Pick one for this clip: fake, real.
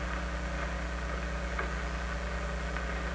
real